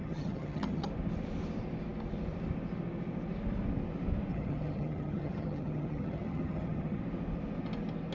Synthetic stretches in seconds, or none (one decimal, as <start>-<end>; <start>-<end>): 0.0-0.9; 4.3-7.0